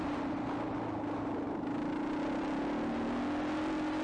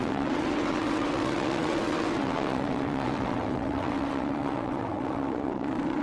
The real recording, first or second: first